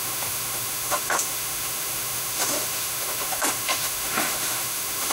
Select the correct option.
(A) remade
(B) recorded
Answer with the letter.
A